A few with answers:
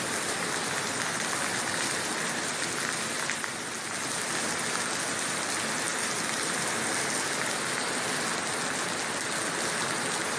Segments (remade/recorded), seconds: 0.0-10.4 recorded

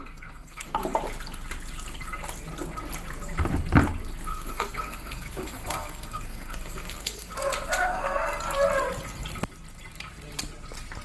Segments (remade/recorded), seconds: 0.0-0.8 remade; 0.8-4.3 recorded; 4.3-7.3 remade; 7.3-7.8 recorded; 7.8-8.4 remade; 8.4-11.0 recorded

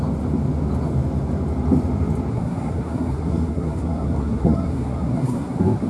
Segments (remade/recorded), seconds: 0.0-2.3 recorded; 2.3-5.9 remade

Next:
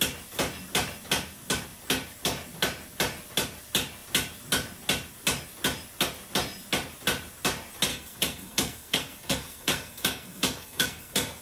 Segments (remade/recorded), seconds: 0.0-7.9 recorded; 7.9-11.4 remade